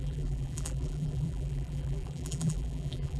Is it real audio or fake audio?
fake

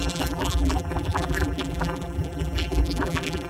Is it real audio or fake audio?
fake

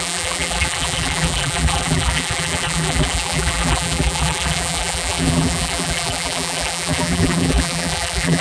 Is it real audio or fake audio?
fake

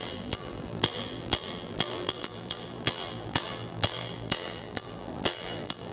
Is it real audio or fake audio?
fake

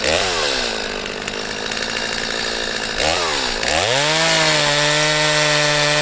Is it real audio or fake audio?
real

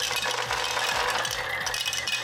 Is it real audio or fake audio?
real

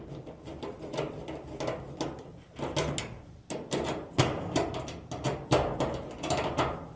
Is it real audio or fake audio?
real